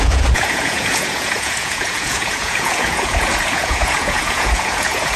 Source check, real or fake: fake